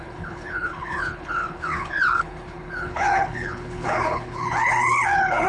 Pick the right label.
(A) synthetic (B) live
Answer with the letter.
A